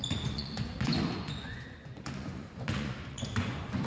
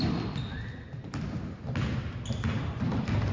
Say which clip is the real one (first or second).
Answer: second